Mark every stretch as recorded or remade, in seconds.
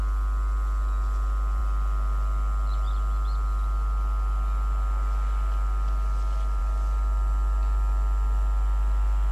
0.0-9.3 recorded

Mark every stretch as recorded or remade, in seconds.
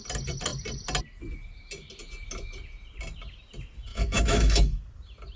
0.0-3.9 recorded; 3.9-4.8 remade; 4.8-5.4 recorded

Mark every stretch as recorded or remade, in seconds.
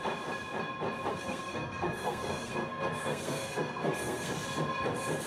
0.0-1.1 recorded; 1.1-4.3 remade; 4.3-5.3 recorded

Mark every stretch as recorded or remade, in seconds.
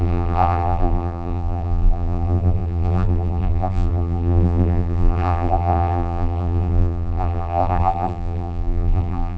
0.0-9.4 remade